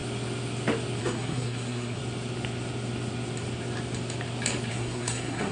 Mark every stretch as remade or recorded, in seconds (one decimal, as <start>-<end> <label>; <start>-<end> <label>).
0.0-1.0 recorded; 1.0-2.0 remade; 2.0-4.7 recorded; 4.7-5.5 remade